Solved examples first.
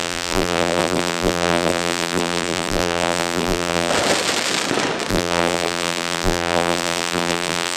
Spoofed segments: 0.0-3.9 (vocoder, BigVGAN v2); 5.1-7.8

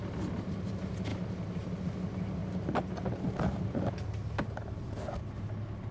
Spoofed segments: none

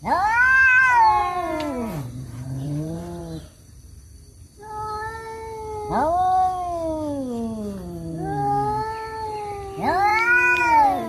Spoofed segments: 1.2-3.2 (vocoder, BigVGAN v2)

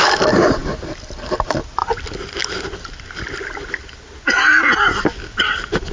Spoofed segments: none

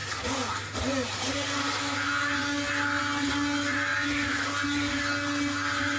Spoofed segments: none

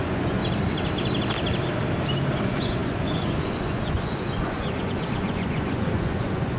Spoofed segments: 0.0-0.4 (vocoder, Vocos); 2.4-6.6

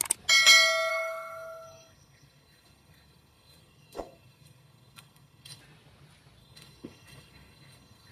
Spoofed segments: 0.9-5.6 (codec, SNAC); 6.4-8.1